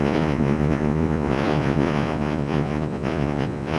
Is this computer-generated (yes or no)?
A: yes